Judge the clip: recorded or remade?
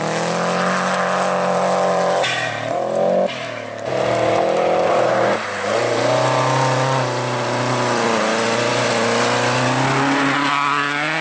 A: recorded